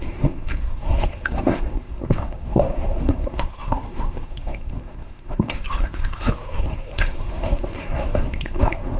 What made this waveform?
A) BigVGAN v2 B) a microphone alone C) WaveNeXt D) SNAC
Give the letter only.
D